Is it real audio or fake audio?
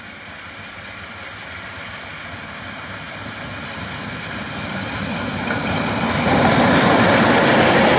real